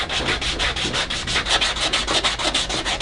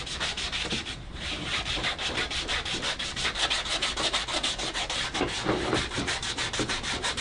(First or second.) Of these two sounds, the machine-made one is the second